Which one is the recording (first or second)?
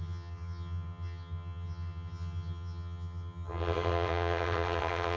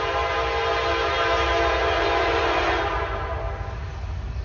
second